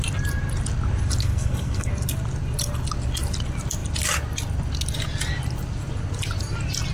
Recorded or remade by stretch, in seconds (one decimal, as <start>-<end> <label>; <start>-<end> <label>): 0.0-1.2 recorded; 1.2-1.9 remade; 1.9-6.9 recorded